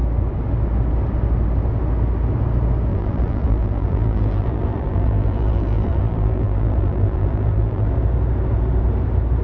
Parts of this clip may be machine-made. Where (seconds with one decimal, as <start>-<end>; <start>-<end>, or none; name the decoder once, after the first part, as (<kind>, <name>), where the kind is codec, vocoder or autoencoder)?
2.9-7.9 (vocoder, BigVGAN v2)